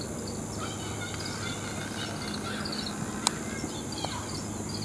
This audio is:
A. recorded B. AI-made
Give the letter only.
A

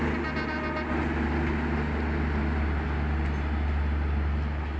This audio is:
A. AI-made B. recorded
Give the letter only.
B